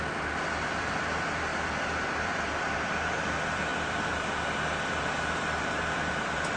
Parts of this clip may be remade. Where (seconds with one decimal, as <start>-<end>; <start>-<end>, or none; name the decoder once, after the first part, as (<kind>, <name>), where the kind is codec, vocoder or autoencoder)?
0.0-6.6 (vocoder, BigVGAN v2)

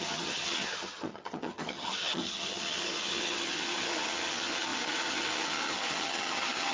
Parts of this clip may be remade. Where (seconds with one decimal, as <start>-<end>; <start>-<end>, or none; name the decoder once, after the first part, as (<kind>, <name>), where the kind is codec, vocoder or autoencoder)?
0.0-6.7 (vocoder, HiFi-GAN)

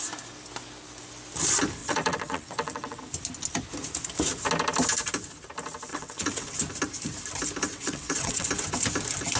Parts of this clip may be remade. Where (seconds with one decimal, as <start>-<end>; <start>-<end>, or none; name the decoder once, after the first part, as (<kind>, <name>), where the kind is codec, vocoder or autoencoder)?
1.8-3.0 (vocoder, WaveNeXt); 5.9-6.6; 7.7-8.5